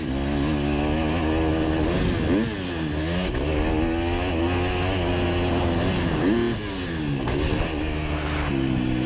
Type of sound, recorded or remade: recorded